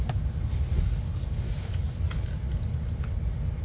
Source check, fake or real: real